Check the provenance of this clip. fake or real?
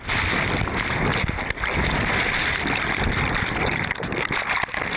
real